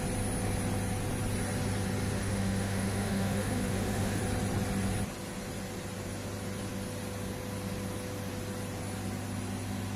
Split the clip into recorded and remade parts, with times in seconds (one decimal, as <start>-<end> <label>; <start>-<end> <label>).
0.0-2.2 recorded; 2.2-4.2 remade; 4.2-10.0 recorded